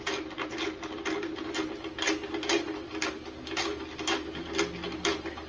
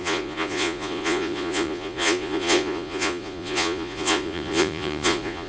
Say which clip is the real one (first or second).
first